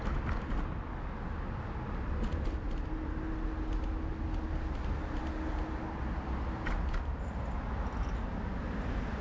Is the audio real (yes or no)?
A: yes